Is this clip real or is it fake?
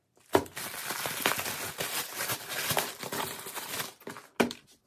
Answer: real